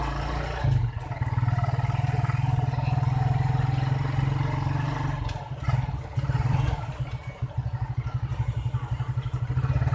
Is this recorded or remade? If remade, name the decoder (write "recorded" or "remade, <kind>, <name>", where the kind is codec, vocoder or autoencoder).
recorded